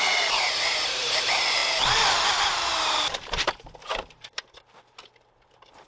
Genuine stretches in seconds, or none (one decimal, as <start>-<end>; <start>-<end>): none